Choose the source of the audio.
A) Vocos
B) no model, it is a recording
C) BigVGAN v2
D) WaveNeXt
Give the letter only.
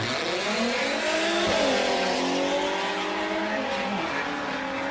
B